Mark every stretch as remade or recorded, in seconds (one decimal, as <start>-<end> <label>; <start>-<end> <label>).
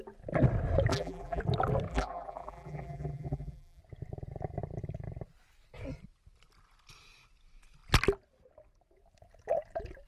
0.0-0.9 recorded; 0.9-1.4 remade; 1.4-1.9 recorded; 1.9-3.8 remade; 3.8-10.1 recorded